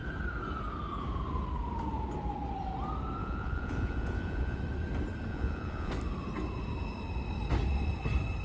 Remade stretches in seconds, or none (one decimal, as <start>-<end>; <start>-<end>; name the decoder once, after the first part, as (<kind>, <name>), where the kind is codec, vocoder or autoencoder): 3.2-4.6 (vocoder, Vocos); 5.3-5.9